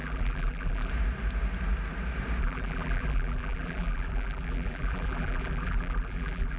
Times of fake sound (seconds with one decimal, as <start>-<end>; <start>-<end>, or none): 0.0-0.9; 2.4-6.6